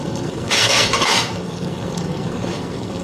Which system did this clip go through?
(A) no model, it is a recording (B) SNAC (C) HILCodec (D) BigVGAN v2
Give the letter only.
B